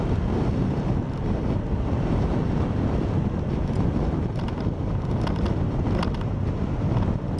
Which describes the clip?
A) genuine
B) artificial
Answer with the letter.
A